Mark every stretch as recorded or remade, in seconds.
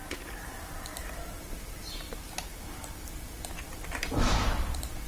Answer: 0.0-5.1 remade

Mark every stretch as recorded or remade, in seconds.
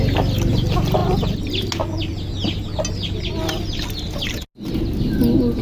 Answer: 0.0-5.6 recorded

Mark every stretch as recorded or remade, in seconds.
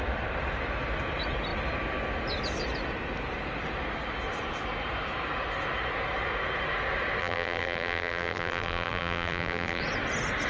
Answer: 0.0-7.2 recorded; 7.2-9.8 remade; 9.8-10.5 recorded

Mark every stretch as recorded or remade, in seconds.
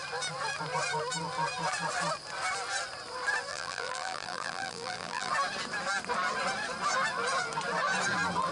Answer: 0.0-3.5 recorded; 3.5-5.3 remade; 5.3-8.5 recorded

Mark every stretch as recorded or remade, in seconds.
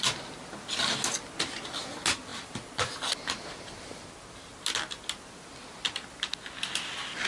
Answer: 0.0-2.3 recorded; 2.3-3.0 remade; 3.0-7.3 recorded